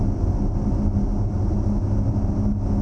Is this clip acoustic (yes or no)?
yes